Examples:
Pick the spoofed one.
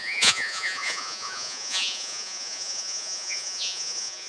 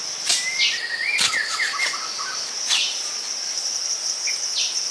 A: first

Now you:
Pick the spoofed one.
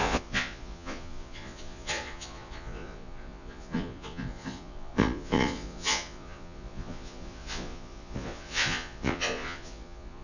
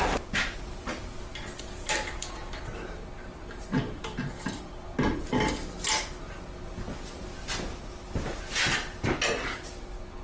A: first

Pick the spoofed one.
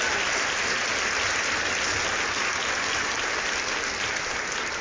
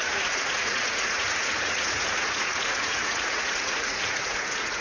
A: second